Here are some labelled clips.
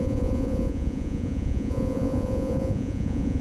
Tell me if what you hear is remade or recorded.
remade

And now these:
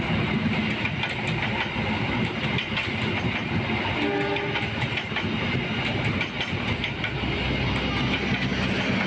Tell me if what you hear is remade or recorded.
recorded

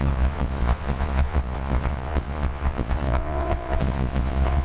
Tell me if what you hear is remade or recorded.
remade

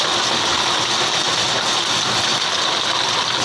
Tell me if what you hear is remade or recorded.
recorded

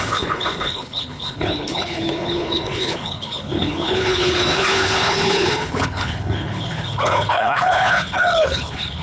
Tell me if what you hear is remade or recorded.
remade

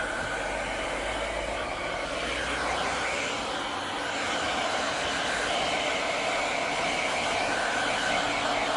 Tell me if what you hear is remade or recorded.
recorded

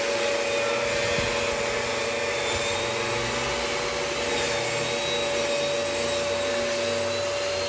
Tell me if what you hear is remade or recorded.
recorded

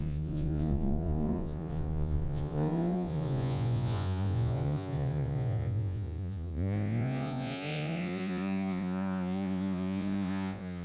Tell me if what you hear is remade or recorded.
remade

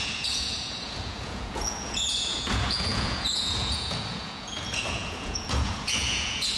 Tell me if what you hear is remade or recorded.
remade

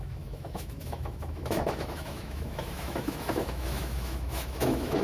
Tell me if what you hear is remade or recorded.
remade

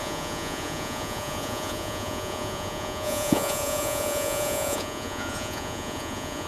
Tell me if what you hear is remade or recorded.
remade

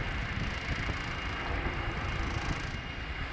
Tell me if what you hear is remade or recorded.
recorded